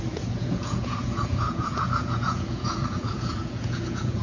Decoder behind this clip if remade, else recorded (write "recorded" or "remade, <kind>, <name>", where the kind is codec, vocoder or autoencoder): remade, vocoder, Vocos